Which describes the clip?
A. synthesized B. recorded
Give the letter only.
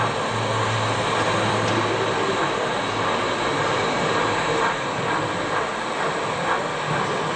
B